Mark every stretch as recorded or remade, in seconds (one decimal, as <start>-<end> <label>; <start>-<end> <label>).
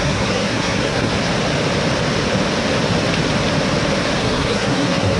0.0-1.1 remade; 1.1-4.2 recorded; 4.2-5.2 remade